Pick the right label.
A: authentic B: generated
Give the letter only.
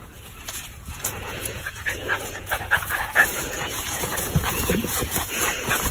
B